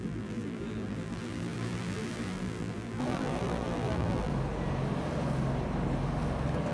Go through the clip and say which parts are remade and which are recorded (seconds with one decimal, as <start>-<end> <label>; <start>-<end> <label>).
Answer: 0.0-4.3 remade; 4.3-6.7 recorded